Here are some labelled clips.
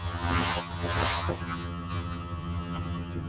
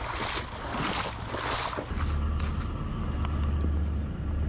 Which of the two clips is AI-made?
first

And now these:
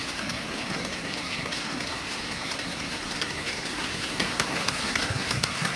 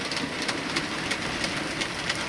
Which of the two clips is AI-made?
first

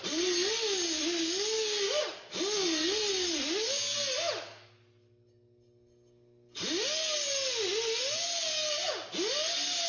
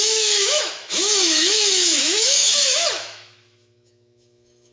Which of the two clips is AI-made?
second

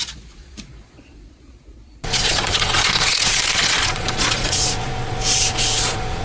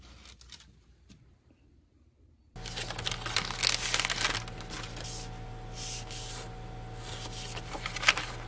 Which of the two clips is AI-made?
first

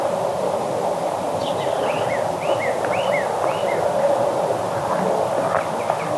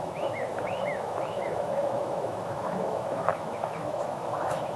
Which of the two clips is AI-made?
second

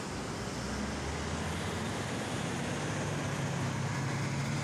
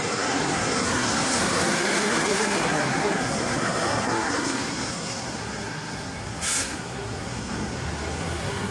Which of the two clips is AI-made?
second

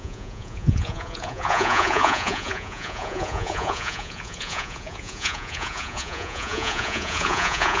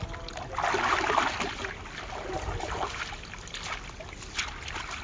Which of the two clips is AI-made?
first